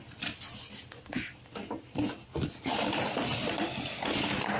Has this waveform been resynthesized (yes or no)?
no